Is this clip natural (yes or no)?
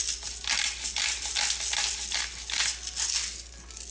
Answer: yes